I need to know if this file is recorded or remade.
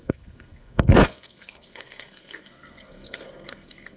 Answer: remade